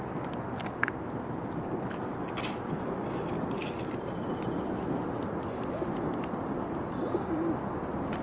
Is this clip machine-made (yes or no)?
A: no